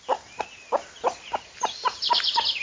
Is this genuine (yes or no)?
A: yes